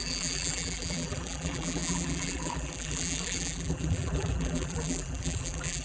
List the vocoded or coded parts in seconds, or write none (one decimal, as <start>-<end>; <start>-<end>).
0.0-5.8